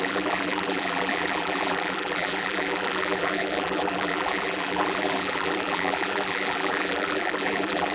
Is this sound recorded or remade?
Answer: remade